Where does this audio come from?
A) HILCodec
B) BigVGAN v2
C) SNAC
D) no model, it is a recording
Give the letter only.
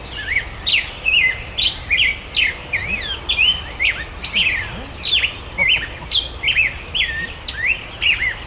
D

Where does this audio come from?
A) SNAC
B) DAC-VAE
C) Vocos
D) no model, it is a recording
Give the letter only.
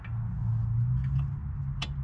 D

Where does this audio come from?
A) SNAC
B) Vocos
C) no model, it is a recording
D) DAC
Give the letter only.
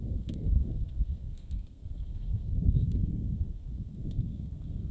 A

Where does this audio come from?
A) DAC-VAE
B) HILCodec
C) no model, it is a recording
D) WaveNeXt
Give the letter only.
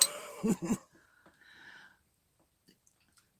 C